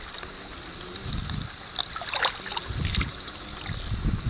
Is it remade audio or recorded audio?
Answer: recorded